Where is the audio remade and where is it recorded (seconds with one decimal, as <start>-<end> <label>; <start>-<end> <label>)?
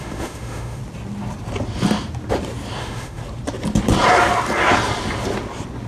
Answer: 0.0-0.8 remade; 0.8-2.8 recorded; 2.8-3.2 remade; 3.2-5.9 recorded